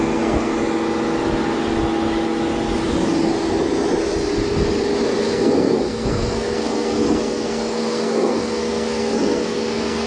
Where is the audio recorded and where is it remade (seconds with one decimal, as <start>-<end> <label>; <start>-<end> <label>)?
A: 0.0-0.5 remade; 0.5-5.2 recorded; 5.2-10.1 remade